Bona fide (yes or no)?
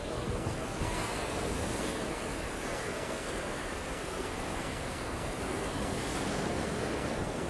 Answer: no